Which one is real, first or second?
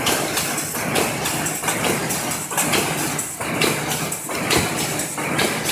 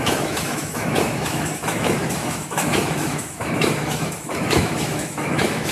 first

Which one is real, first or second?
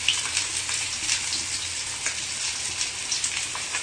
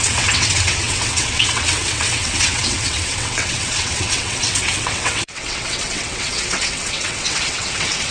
first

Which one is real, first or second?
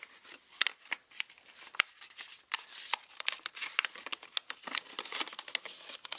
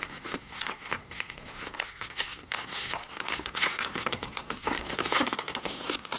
first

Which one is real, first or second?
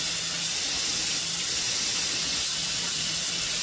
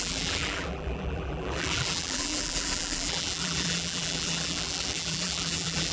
first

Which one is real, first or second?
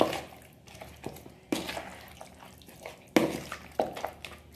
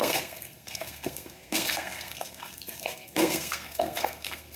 first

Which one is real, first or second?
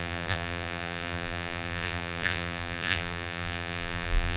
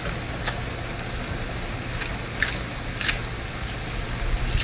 second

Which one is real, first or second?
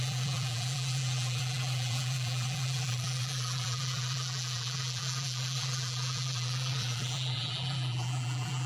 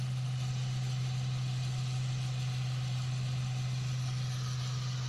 second